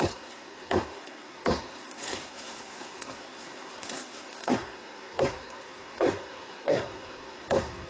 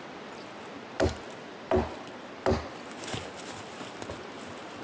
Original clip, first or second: second